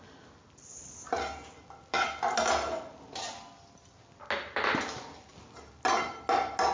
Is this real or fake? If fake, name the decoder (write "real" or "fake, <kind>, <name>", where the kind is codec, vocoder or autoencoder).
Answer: real